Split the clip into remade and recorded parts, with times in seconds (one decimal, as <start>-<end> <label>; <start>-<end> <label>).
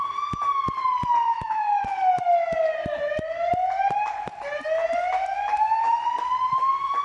0.0-1.3 recorded; 1.3-1.8 remade; 1.8-7.0 recorded